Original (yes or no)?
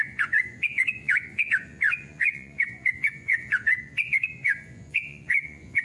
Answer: no